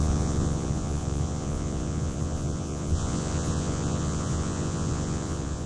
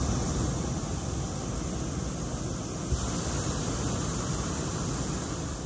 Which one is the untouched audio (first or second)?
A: second